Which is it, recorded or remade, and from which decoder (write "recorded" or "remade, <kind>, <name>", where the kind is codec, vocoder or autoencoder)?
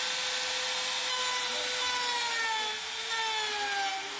recorded